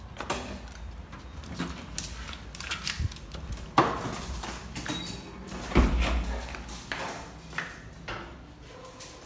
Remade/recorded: recorded